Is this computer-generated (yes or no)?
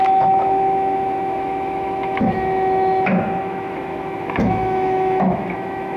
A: yes